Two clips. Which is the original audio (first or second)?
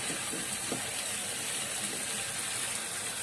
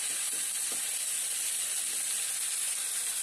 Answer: second